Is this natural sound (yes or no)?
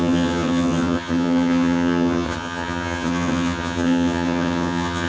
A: no